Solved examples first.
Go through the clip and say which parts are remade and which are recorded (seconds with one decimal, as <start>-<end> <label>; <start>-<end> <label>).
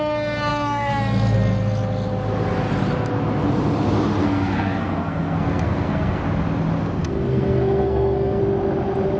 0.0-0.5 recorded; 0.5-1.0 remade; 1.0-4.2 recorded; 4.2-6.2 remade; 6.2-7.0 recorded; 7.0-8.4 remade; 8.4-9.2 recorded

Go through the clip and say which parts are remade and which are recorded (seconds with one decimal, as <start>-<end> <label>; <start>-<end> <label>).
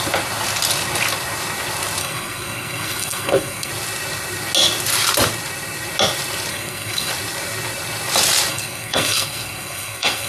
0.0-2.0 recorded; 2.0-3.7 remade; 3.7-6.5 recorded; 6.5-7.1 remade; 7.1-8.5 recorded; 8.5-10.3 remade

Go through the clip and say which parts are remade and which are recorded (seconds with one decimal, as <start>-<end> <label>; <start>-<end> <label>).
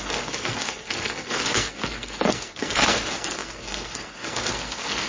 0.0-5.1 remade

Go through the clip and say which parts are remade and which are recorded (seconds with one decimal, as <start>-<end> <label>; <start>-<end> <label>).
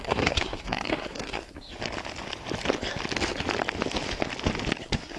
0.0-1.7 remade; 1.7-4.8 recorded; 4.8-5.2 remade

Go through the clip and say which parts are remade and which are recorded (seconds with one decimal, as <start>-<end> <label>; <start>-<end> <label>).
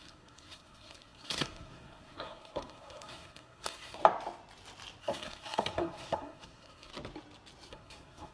0.0-4.0 remade; 4.0-5.0 recorded; 5.0-6.9 remade; 6.9-7.7 recorded; 7.7-8.3 remade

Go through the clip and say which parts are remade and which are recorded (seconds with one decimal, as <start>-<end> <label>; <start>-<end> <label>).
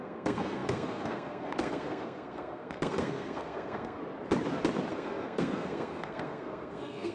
0.0-4.0 remade; 4.0-4.9 recorded; 4.9-7.1 remade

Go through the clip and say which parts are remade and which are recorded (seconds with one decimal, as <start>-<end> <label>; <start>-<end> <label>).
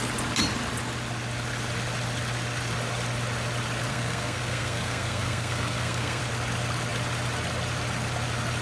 0.0-3.9 recorded; 3.9-6.2 remade; 6.2-8.6 recorded